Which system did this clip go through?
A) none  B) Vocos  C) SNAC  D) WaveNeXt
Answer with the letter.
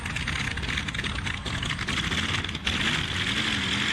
A